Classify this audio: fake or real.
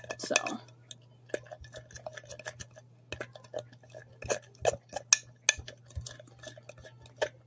real